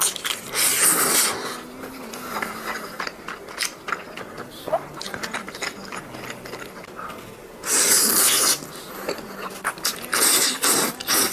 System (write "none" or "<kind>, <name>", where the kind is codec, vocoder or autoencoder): none